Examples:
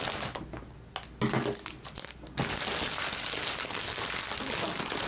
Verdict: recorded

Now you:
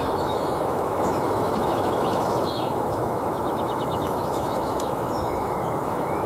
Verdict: remade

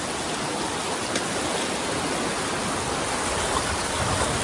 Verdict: recorded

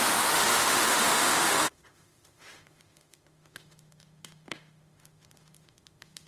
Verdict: remade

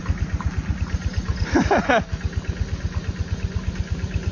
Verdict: recorded